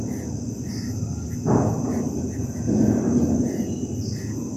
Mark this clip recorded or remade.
recorded